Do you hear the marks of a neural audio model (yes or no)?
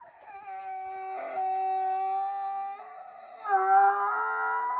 no